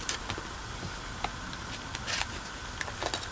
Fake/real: real